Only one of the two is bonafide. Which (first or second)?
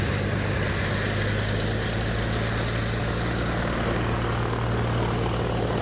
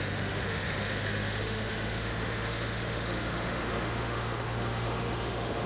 first